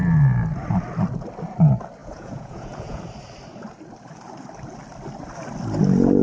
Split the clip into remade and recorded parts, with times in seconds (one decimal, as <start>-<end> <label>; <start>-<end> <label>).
0.0-2.0 recorded; 2.0-3.0 remade; 3.0-6.2 recorded